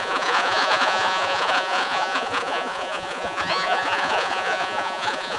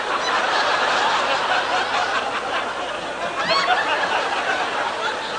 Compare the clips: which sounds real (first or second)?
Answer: second